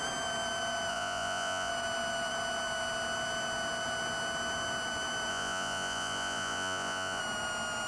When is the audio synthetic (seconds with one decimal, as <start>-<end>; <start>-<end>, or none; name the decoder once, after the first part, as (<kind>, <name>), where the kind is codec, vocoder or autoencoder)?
0.9-1.7 (vocoder, Vocos); 5.3-7.2